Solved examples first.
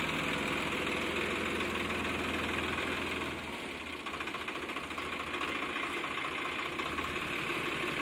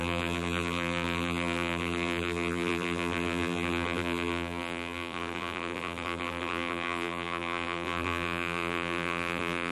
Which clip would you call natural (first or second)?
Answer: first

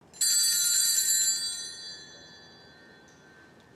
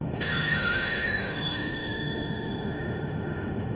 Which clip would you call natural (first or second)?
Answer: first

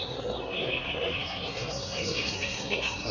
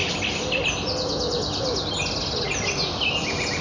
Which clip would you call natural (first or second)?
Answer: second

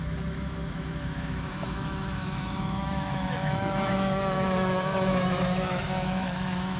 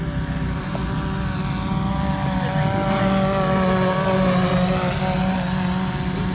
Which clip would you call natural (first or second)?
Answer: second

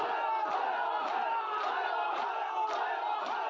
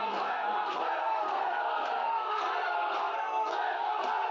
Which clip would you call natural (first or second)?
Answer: first